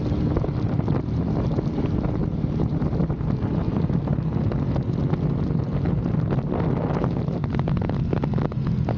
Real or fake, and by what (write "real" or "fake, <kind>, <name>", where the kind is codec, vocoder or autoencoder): real